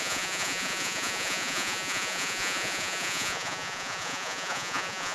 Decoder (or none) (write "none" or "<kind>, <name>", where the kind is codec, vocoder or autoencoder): vocoder, Vocos